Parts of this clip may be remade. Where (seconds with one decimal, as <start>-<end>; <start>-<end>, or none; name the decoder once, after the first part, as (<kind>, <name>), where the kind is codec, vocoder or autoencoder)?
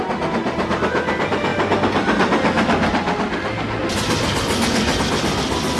none